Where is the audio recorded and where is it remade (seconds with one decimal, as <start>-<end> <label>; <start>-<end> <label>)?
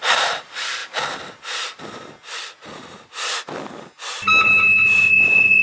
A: 0.0-5.6 recorded